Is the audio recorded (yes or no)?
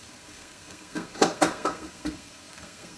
no